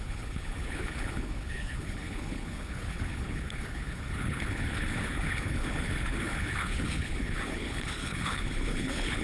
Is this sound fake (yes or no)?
yes